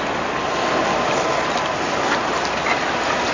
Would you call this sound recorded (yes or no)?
yes